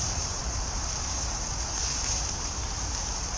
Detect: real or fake fake